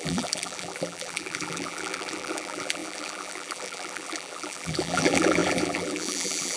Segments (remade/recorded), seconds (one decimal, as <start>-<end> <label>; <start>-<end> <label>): 0.0-6.6 remade